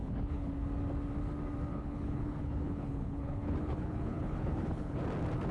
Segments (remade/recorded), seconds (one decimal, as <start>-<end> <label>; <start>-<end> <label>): 0.0-0.5 remade; 0.5-1.7 recorded; 1.7-5.0 remade; 5.0-5.5 recorded